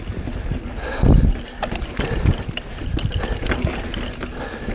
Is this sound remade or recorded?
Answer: recorded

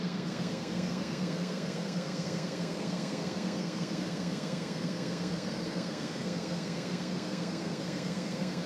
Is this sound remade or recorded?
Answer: remade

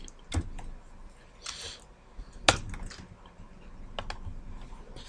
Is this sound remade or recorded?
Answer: recorded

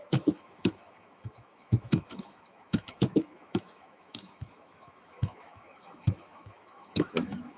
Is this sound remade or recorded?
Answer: remade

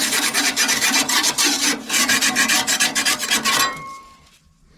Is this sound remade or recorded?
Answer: remade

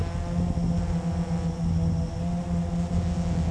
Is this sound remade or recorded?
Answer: recorded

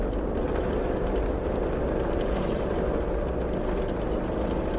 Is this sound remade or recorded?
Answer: recorded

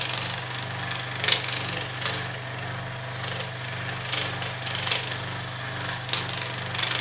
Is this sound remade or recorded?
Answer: recorded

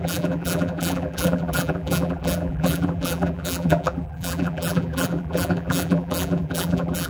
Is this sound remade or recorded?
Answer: remade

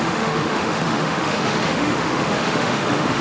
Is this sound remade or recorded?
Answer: remade